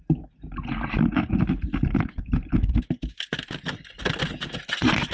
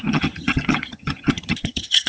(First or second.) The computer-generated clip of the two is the second